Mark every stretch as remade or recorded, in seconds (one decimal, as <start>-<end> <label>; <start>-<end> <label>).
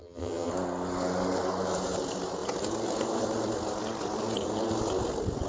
0.0-0.5 remade; 0.5-5.5 recorded